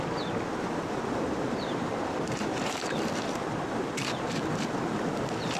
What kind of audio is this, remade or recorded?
remade